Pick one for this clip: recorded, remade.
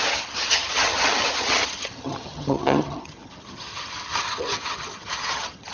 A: remade